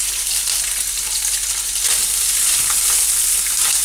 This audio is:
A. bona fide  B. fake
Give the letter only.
A